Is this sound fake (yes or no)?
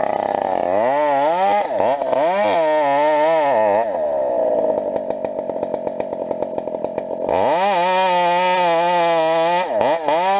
no